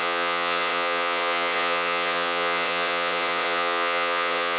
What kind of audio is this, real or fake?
fake